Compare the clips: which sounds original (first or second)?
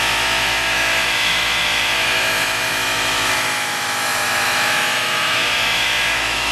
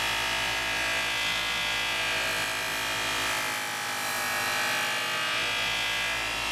second